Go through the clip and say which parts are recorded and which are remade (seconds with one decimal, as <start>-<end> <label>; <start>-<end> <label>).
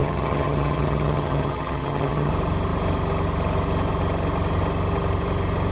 0.0-2.3 remade; 2.3-5.7 recorded